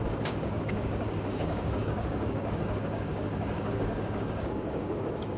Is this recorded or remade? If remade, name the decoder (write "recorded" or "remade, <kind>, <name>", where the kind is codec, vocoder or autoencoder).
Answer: remade, codec, DAC